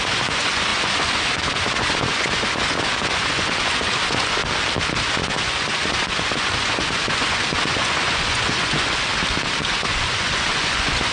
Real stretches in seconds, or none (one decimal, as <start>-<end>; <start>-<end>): 4.4-5.1; 9.1-9.6